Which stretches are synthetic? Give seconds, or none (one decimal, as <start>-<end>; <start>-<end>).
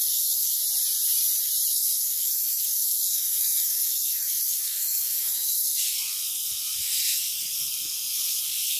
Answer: 0.0-0.6; 1.7-8.8